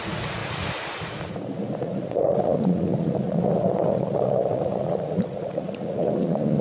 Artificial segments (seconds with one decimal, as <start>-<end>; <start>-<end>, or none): 0.0-0.4; 1.8-6.6